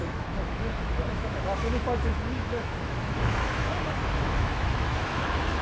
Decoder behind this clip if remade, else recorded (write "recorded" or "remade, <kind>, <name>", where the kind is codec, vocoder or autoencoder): remade, autoencoder, DAC-VAE